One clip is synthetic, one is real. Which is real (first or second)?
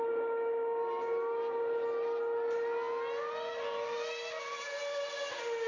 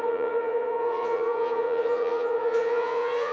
first